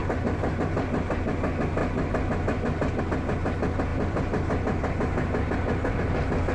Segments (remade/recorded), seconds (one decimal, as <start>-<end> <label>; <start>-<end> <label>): 0.0-1.4 remade; 1.4-1.8 recorded; 1.8-3.0 remade; 3.0-3.9 recorded; 3.9-6.0 remade; 6.0-6.5 recorded